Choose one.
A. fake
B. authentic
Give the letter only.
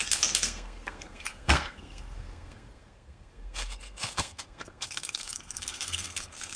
A